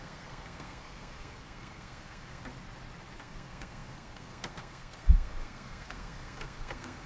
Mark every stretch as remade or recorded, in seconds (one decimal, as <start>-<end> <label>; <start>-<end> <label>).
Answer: 0.0-2.4 remade; 2.4-3.2 recorded; 3.2-7.1 remade